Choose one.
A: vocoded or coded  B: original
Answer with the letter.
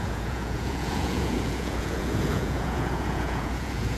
A